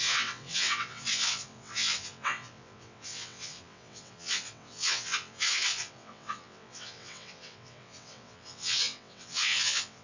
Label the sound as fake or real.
fake